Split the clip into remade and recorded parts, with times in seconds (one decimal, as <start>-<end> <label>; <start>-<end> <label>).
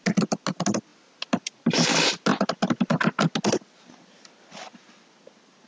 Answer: 0.0-5.7 recorded